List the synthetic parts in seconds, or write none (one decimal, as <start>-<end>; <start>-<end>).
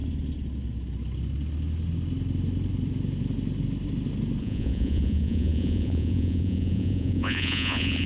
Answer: 4.4-8.1